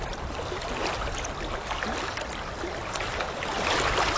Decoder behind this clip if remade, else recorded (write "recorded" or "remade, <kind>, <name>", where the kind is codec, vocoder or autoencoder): recorded